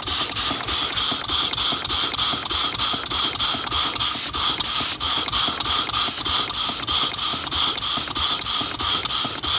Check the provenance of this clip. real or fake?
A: real